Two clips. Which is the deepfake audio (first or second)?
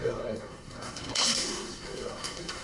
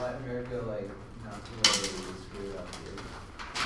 first